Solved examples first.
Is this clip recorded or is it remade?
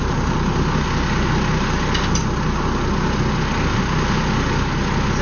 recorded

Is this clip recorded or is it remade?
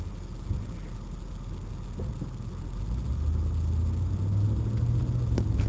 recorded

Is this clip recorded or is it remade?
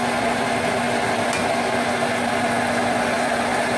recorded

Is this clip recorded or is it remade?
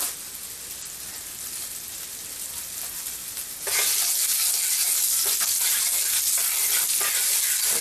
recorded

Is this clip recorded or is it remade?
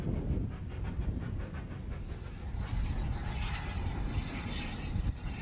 recorded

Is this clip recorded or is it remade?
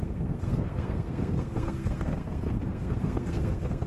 remade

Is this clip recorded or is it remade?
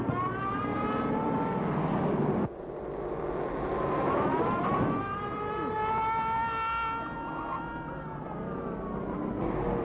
recorded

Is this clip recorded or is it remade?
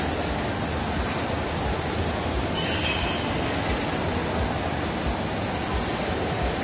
recorded